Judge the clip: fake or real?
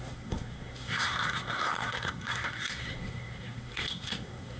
fake